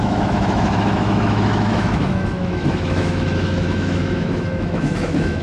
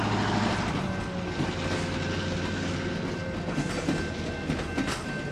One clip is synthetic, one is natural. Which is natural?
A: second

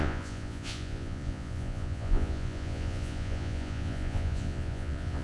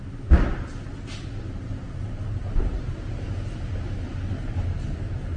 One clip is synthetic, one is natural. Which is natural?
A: second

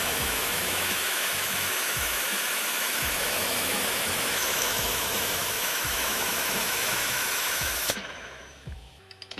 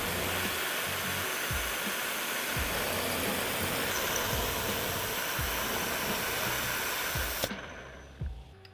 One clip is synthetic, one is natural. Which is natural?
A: second